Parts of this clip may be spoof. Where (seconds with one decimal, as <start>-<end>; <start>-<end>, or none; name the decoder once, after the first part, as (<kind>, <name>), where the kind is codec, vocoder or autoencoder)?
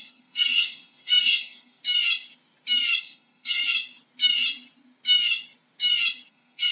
0.0-1.8 (codec, SNAC); 3.0-3.6; 6.3-6.7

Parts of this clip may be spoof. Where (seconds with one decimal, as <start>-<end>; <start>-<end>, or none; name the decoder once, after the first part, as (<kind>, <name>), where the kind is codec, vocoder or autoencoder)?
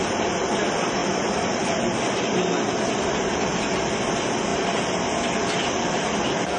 1.0-3.3 (vocoder, BigVGAN v2); 4.5-6.0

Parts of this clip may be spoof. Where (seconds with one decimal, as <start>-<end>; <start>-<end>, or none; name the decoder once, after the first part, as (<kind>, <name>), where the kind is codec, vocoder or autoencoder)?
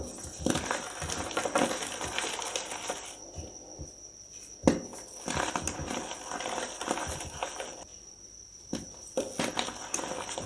7.9-9.1 (vocoder, BigVGAN v2)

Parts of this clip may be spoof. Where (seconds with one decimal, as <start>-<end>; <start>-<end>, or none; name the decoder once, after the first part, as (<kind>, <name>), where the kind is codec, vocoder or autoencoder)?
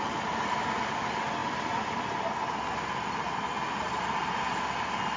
none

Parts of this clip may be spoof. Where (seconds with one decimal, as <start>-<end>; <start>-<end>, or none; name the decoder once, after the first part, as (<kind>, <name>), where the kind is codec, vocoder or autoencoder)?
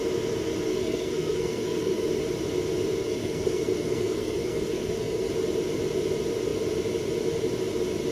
0.7-2.1 (codec, SNAC); 3.0-5.3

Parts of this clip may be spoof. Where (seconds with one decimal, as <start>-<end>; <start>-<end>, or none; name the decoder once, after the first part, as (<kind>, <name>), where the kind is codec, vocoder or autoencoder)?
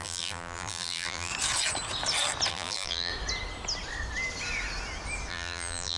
0.0-1.3 (vocoder, BigVGAN v2); 2.5-3.1; 5.3-6.0